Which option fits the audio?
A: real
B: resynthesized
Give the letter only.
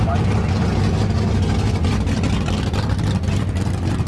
A